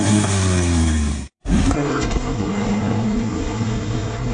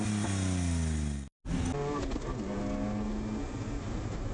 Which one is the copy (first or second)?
first